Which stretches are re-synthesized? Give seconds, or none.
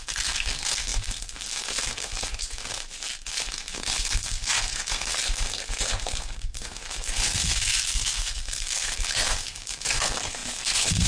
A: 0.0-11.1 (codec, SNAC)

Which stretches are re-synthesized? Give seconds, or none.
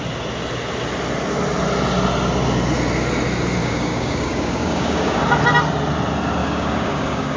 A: 3.6-5.2 (codec, DAC); 6.4-7.4